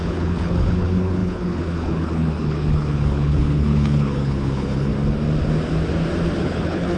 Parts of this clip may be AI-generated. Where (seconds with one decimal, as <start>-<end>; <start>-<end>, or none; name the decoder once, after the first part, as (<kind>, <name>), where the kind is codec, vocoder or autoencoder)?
0.0-4.9 (codec, HILCodec); 6.4-7.0